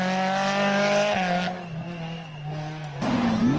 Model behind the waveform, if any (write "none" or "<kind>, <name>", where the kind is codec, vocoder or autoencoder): none